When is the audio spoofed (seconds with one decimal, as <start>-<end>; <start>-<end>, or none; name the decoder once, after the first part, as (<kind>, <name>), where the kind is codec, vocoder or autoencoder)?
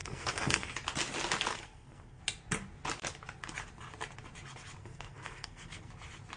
0.0-0.7 (codec, SNAC); 1.5-2.2; 4.8-5.9